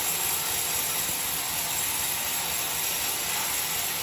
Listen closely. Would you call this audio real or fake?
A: real